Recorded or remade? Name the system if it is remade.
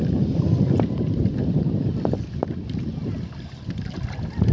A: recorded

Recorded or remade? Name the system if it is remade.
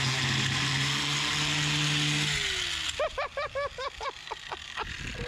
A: recorded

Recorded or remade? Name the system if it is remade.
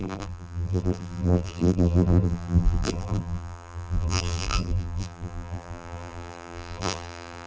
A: remade, vocoder, BigVGAN v2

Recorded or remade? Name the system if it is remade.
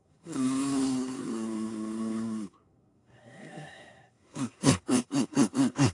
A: remade, codec, SNAC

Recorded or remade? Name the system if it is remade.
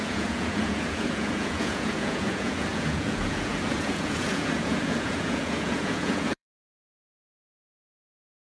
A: remade, vocoder, Vocos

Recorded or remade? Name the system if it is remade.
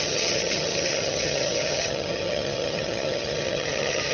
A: remade, vocoder, HiFi-GAN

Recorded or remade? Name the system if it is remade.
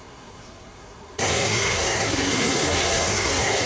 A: remade, codec, SNAC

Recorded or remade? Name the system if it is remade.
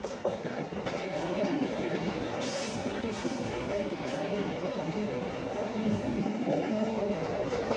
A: remade, codec, SNAC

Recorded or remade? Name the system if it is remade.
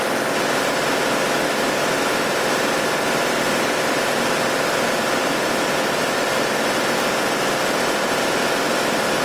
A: recorded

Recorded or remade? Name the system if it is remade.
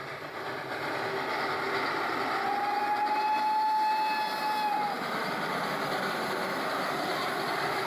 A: recorded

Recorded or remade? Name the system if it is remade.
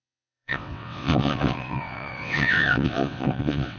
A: remade, vocoder, WaveNeXt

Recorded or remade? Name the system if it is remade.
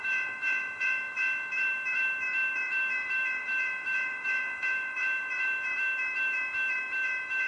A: remade, autoencoder, DAC-VAE